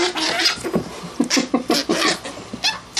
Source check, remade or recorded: recorded